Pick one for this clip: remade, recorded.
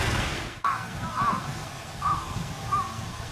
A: remade